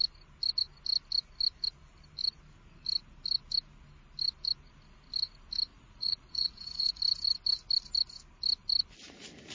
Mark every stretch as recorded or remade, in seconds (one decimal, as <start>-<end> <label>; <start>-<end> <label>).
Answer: 0.0-5.7 recorded; 5.7-7.0 remade; 7.0-9.5 recorded